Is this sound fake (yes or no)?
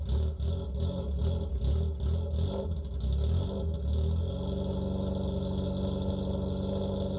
no